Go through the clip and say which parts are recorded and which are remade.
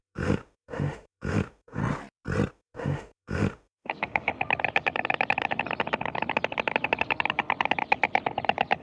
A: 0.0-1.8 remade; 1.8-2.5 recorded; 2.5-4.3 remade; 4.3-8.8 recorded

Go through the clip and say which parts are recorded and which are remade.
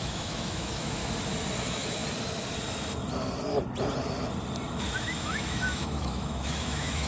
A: 0.0-1.0 remade; 1.0-1.6 recorded; 1.6-2.0 remade; 2.0-5.0 recorded; 5.0-7.1 remade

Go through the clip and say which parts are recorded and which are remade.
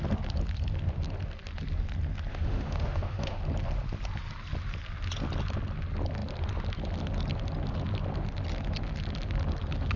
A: 0.0-2.3 recorded; 2.3-3.4 remade; 3.4-10.0 recorded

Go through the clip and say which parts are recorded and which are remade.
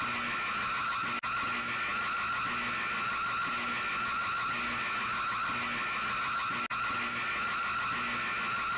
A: 0.0-8.8 recorded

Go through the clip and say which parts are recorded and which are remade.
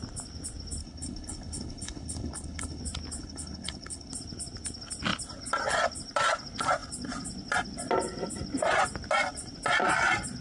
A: 0.0-0.8 recorded; 0.8-2.8 remade; 2.8-3.2 recorded; 3.2-4.1 remade; 4.1-10.4 recorded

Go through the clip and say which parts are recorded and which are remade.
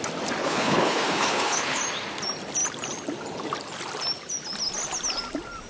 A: 0.0-0.4 recorded; 0.4-1.8 remade; 1.8-5.7 recorded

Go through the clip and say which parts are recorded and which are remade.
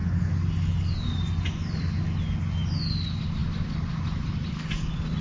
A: 0.0-5.2 recorded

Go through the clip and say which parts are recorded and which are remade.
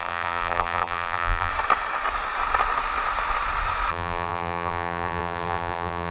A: 0.0-1.5 remade; 1.5-3.9 recorded; 3.9-6.1 remade